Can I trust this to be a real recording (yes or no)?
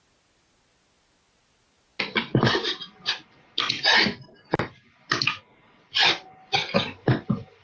yes